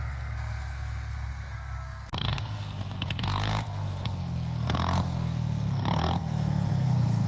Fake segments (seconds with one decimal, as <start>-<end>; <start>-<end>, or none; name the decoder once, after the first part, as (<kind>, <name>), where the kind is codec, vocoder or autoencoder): 0.0-7.3 (codec, SNAC)